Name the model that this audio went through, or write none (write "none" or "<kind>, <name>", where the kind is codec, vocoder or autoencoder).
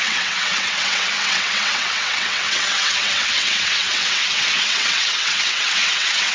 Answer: vocoder, WaveNeXt